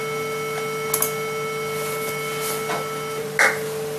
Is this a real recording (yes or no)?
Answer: yes